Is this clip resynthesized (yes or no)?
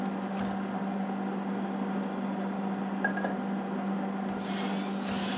no